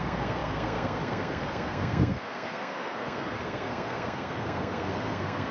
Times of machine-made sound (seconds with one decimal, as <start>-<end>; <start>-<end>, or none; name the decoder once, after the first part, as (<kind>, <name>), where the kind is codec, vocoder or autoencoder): 0.0-5.5 (codec, SNAC)